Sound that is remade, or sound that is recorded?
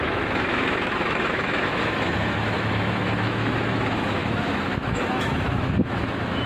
remade